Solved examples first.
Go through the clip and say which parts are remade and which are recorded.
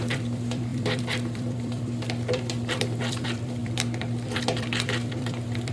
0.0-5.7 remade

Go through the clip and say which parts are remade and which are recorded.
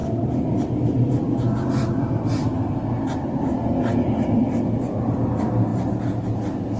0.0-5.7 remade; 5.7-6.8 recorded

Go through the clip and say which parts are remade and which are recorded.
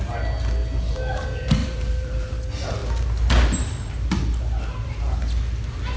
0.0-1.6 recorded; 1.6-2.3 remade; 2.3-6.0 recorded